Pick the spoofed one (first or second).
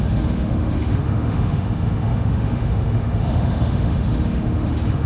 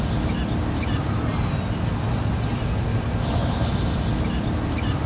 first